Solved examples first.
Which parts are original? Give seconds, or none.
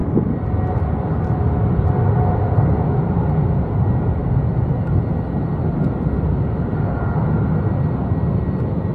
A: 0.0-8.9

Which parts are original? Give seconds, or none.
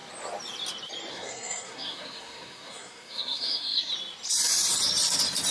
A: 0.0-1.1; 3.9-5.5